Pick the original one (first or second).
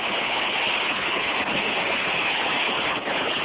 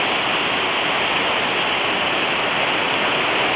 second